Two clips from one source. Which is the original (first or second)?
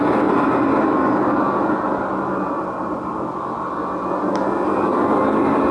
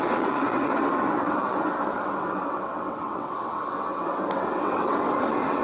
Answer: first